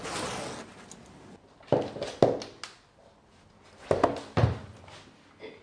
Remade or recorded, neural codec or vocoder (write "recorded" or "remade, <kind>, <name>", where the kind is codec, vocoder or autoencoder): recorded